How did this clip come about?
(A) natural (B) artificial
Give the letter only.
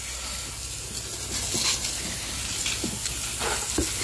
A